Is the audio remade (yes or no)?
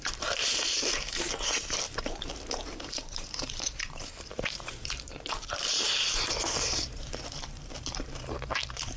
yes